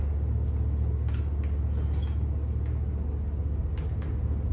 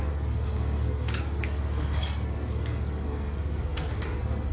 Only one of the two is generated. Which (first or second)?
second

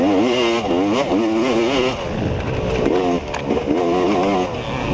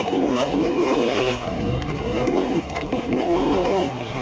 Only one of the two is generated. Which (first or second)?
second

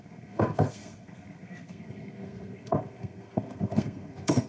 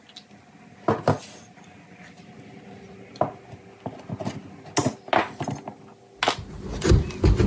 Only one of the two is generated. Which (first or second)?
first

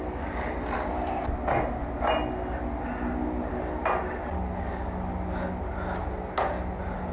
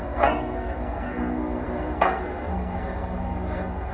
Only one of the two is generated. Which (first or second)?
second